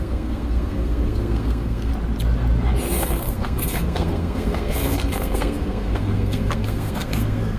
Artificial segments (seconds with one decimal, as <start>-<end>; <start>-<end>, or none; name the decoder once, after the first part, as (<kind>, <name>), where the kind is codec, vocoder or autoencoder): 0.0-1.9 (codec, SNAC); 3.0-7.6

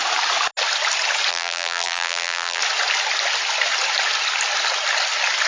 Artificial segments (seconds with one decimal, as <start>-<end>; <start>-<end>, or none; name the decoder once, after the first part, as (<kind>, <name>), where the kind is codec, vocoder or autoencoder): 1.3-2.6 (vocoder, BigVGAN v2)

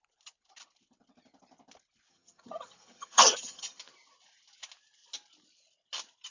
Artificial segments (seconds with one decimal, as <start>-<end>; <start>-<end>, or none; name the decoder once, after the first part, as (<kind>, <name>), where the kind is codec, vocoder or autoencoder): 2.1-3.8 (vocoder, HiFi-GAN)

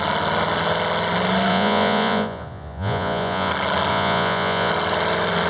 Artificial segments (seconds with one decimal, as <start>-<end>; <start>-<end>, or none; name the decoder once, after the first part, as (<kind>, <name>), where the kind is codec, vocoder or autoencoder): 1.5-3.5 (vocoder, Vocos); 3.9-4.7